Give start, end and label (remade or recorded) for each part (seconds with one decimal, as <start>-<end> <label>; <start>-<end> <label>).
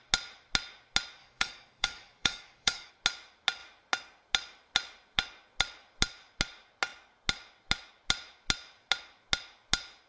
0.0-1.2 recorded; 1.2-2.9 remade; 2.9-10.1 recorded